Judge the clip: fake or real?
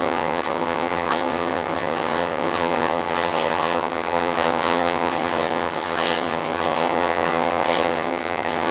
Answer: fake